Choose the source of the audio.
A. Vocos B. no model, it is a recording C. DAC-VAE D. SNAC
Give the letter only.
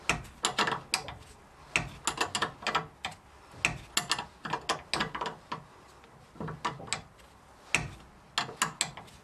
B